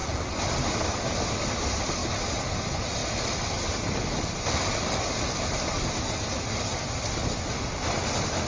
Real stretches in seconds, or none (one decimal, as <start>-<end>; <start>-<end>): 0.0-8.5